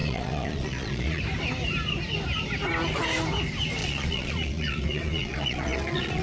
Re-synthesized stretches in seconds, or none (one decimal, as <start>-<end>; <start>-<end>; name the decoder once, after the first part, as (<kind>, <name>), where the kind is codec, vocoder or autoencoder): 0.0-1.2 (vocoder, Vocos); 3.8-6.2